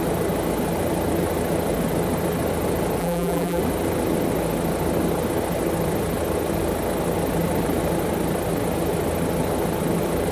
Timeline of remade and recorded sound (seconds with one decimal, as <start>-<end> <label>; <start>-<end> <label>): 0.0-3.0 recorded; 3.0-3.6 remade; 3.6-10.3 recorded